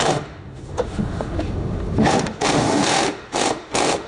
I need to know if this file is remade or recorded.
remade